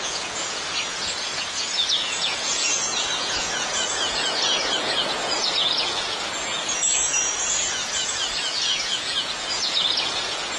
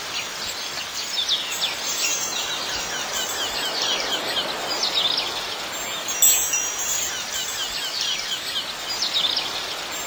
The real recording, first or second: second